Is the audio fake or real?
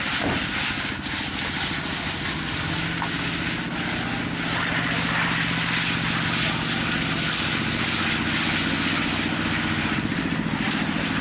real